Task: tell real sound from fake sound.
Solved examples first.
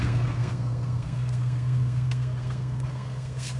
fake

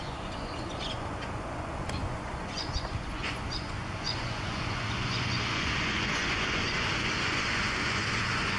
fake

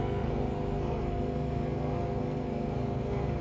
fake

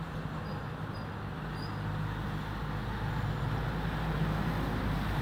real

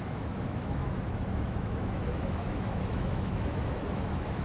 fake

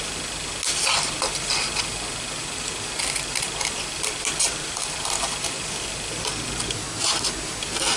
real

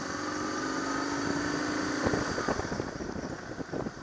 real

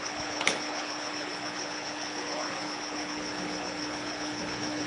fake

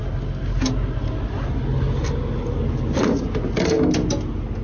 real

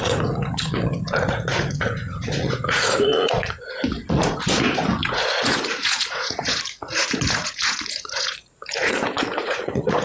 fake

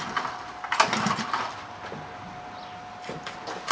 real